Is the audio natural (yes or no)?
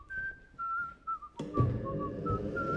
yes